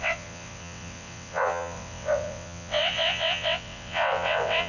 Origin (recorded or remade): remade